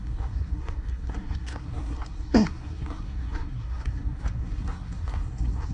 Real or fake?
fake